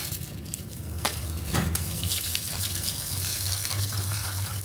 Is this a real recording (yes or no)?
no